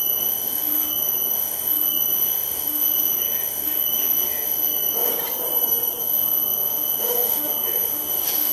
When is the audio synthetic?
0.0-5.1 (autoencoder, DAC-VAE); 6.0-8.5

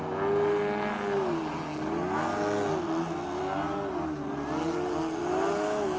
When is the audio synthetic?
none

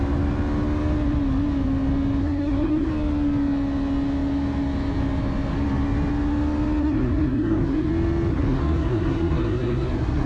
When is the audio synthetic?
2.2-2.9 (codec, SNAC); 6.8-7.9; 8.3-10.3

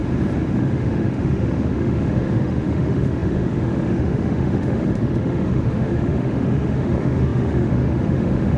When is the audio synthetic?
0.5-8.6 (autoencoder, DAC-VAE)

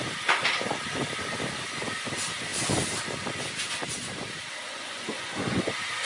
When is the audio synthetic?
4.6-5.6 (vocoder, Vocos)

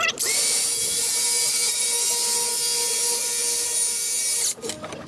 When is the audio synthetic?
none